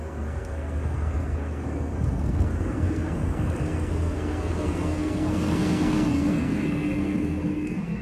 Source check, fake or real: fake